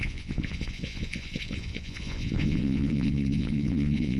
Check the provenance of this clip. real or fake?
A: fake